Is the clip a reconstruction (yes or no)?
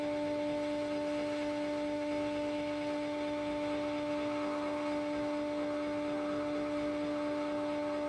yes